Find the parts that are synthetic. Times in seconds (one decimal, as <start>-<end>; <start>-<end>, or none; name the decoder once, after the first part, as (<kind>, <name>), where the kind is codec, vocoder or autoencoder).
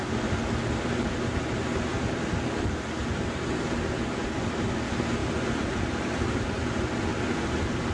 none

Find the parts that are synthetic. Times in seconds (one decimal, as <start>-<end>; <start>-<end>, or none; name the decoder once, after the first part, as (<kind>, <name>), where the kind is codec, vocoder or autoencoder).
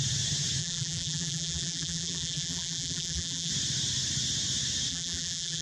0.6-3.5 (vocoder, BigVGAN v2); 4.9-5.6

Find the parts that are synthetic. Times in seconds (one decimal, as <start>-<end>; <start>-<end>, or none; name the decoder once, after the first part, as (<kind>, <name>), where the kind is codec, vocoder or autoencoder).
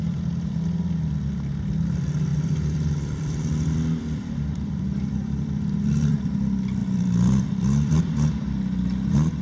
2.3-6.3 (vocoder, BigVGAN v2); 6.8-8.0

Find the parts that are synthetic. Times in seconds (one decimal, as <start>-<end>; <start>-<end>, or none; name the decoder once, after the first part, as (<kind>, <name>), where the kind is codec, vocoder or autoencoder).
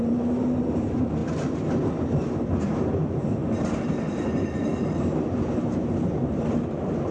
0.0-1.2 (vocoder, BigVGAN v2); 1.9-3.4; 4.0-7.1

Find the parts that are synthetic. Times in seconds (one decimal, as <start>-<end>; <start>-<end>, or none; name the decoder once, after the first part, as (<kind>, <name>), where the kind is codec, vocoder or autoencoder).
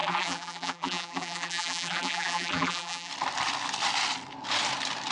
0.0-3.1 (vocoder, BigVGAN v2)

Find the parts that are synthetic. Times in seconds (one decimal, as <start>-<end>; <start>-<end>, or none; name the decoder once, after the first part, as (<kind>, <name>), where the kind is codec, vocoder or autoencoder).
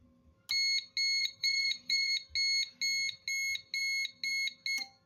1.2-2.1 (vocoder, BigVGAN v2)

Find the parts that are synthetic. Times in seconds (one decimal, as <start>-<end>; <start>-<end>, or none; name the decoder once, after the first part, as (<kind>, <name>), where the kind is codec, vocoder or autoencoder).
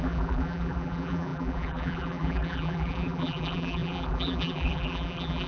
0.0-5.5 (vocoder, BigVGAN v2)